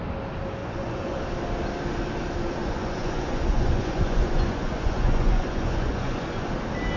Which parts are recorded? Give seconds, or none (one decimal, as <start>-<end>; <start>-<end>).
0.0-0.6; 1.2-2.6; 6.5-7.0